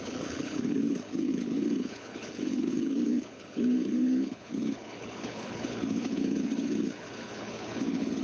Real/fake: fake